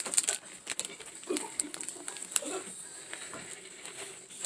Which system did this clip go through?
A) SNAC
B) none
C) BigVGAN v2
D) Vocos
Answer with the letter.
B